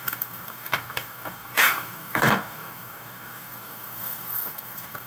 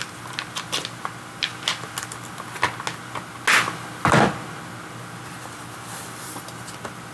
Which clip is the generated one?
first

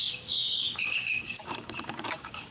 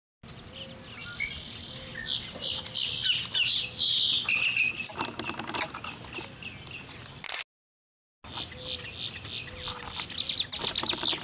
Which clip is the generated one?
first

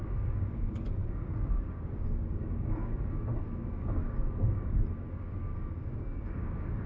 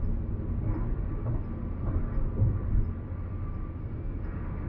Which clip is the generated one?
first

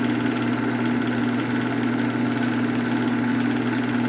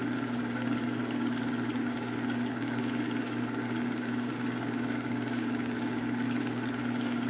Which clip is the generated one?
second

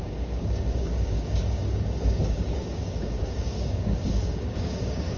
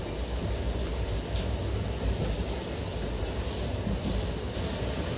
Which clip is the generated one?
first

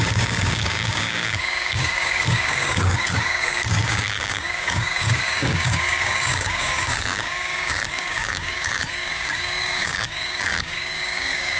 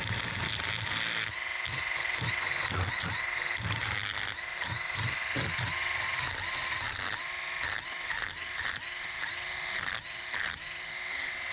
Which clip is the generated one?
first